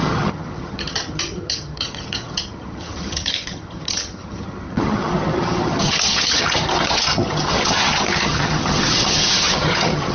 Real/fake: fake